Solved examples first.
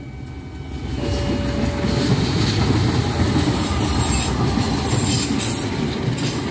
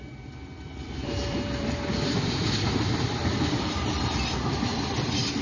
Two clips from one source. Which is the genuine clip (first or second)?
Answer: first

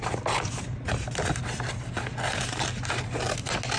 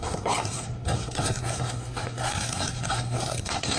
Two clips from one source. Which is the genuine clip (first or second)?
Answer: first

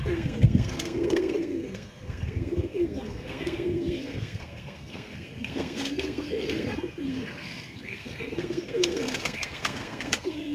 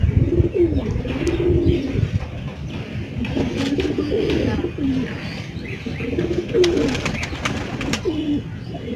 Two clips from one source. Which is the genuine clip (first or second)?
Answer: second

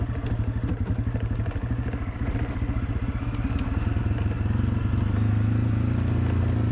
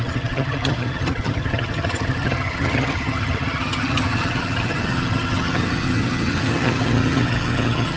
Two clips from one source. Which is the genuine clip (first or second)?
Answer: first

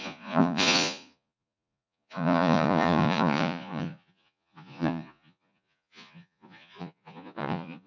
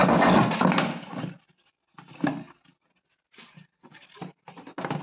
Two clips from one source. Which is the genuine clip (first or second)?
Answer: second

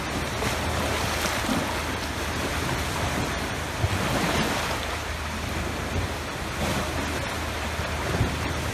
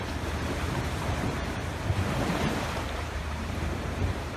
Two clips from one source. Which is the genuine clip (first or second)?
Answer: first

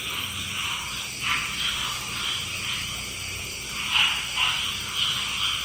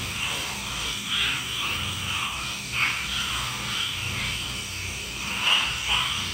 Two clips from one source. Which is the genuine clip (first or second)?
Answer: first